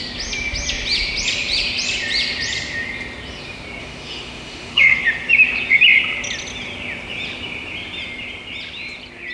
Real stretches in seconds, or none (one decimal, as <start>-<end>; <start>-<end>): 0.0-3.8; 5.0-9.3